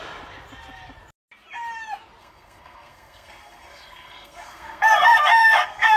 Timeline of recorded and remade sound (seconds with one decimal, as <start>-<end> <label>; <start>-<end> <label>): 0.0-2.2 recorded; 2.2-6.0 remade

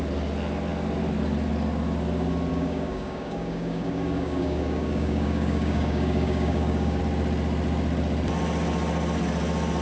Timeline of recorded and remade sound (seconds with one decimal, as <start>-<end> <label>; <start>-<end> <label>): 0.0-2.5 recorded; 2.5-7.0 remade; 7.0-9.8 recorded

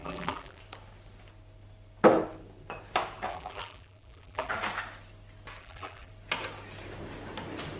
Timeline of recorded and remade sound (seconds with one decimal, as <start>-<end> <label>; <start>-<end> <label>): 0.0-0.6 remade; 0.6-3.3 recorded; 3.3-4.5 remade; 4.5-5.6 recorded; 5.6-6.1 remade; 6.1-7.8 recorded

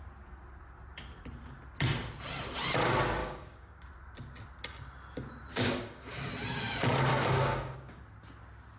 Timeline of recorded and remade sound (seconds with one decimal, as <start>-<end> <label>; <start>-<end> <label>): 0.0-3.2 recorded; 3.2-3.8 remade; 3.8-5.5 recorded; 5.5-6.3 remade; 6.3-7.1 recorded; 7.1-8.0 remade; 8.0-8.8 recorded

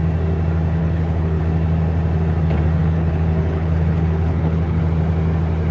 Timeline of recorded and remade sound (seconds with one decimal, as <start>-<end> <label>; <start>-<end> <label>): 0.0-0.8 recorded; 0.8-1.4 remade; 1.4-2.8 recorded; 2.8-4.8 remade; 4.8-5.7 recorded

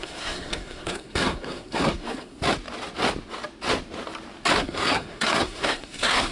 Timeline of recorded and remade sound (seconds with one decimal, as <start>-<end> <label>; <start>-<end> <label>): 0.0-2.4 remade; 2.4-4.6 recorded; 4.6-6.3 remade

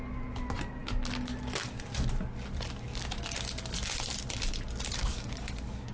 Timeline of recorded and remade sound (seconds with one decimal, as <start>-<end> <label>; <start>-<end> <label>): 0.0-5.0 recorded; 5.0-5.9 remade